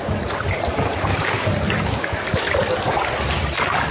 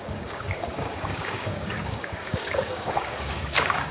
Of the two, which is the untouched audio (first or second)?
first